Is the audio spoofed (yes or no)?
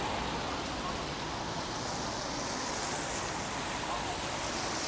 no